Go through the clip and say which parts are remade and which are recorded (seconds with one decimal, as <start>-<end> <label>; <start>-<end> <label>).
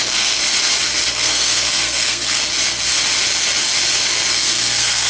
0.0-0.4 remade; 0.4-1.1 recorded; 1.1-2.4 remade; 2.4-4.3 recorded; 4.3-5.1 remade